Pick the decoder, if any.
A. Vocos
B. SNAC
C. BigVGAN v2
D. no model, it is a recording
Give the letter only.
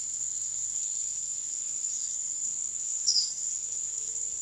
B